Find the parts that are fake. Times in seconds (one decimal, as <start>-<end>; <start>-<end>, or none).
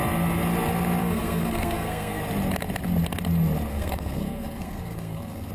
1.0-2.2; 3.7-5.5